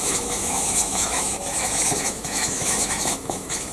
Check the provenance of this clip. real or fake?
fake